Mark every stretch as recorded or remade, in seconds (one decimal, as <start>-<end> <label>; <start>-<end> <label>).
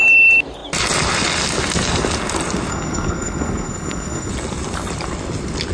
0.0-2.7 recorded; 2.7-4.3 remade; 4.3-5.7 recorded